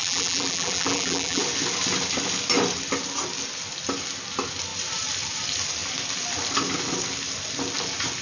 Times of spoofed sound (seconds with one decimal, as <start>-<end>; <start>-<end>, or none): 0.0-1.4